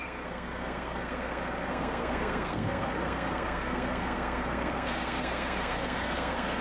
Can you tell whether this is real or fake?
fake